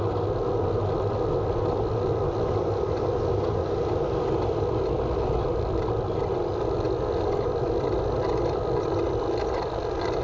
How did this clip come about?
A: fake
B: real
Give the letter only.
B